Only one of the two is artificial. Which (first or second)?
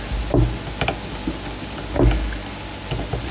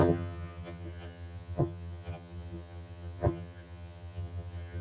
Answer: second